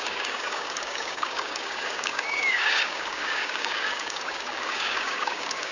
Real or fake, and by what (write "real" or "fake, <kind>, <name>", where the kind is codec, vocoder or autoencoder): fake, codec, DAC